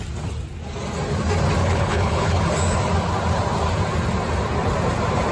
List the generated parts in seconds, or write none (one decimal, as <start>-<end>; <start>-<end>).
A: 1.6-2.4